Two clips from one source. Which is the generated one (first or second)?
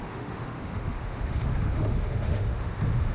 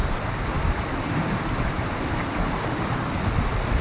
first